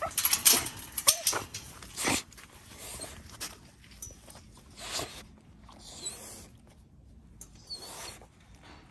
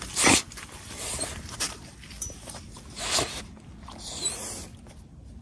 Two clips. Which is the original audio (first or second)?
first